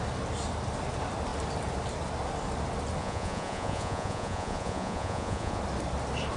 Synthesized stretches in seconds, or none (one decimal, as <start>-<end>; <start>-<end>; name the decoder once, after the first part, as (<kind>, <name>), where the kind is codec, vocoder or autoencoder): 3.0-5.6 (vocoder, Vocos)